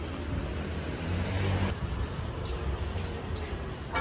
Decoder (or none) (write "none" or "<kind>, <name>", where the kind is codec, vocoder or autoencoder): none